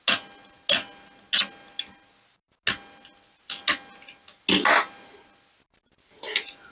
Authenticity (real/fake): real